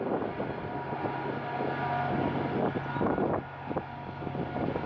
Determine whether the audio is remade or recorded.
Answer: recorded